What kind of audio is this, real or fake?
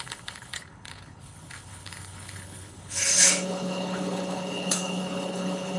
fake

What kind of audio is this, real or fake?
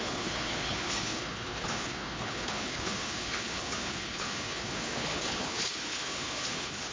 fake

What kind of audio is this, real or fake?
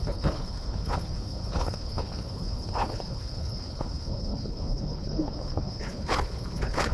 fake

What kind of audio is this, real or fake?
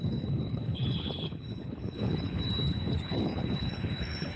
fake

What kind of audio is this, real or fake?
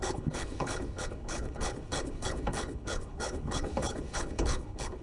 fake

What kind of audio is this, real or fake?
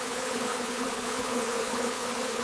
fake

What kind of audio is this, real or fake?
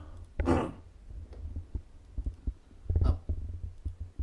real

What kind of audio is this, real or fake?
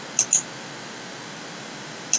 real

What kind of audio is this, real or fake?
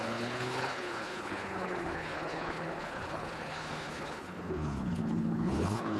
fake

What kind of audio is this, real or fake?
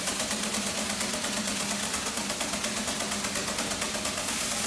real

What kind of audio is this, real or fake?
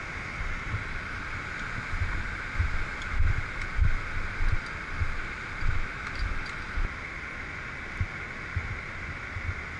real